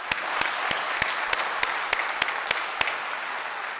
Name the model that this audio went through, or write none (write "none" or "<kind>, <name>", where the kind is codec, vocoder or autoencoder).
none